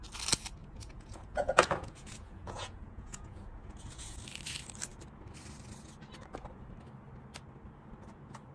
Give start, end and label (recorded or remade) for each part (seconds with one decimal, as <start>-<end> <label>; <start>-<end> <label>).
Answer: 0.0-0.6 recorded; 0.6-4.2 remade; 4.2-8.5 recorded